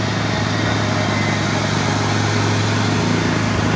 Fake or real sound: real